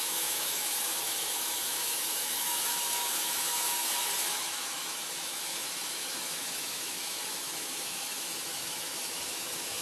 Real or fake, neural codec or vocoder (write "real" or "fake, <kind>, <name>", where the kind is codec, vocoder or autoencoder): fake, autoencoder, DAC-VAE